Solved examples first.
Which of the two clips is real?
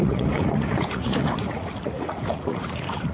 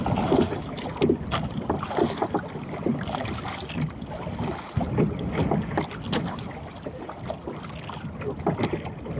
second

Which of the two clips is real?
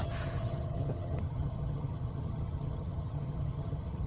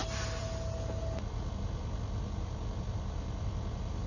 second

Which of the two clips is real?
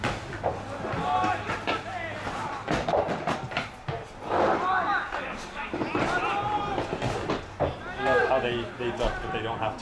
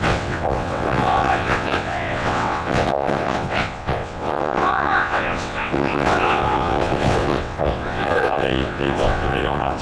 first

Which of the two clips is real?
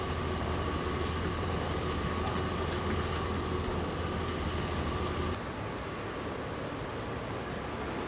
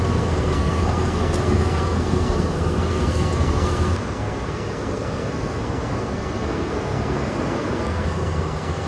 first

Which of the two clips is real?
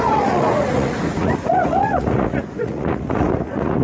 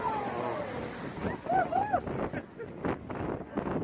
second